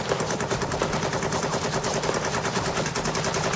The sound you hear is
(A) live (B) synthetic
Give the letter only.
A